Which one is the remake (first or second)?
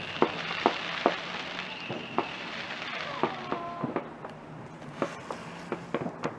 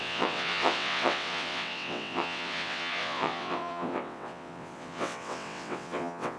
second